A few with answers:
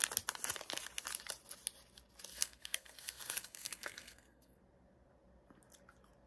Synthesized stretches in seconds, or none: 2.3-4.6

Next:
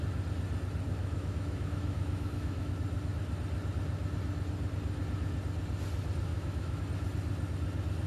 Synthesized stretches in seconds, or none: 1.0-2.7; 6.3-6.8

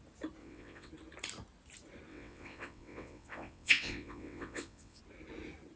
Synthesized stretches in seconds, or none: 0.4-0.9; 2.1-5.0

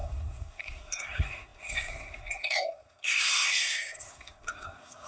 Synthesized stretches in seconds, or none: 0.0-5.1

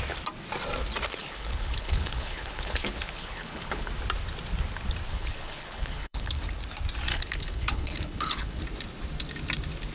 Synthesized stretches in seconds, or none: 1.2-3.9; 5.1-6.4; 7.1-8.6